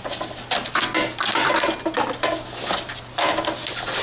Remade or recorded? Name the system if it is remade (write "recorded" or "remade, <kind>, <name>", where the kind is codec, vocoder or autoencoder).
recorded